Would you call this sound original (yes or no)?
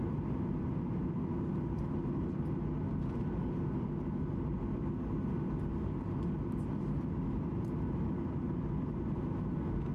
yes